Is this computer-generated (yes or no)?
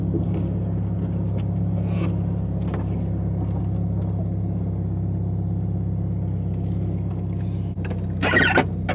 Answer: no